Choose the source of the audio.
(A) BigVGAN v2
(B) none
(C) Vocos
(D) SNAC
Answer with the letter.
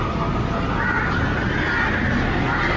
B